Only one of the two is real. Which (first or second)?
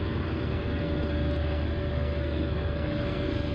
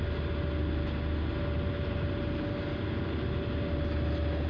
second